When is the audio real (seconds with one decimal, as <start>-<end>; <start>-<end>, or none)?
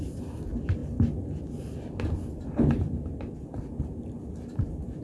0.0-5.0